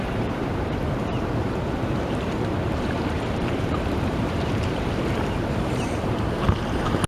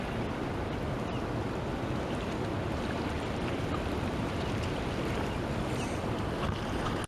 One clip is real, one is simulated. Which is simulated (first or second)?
first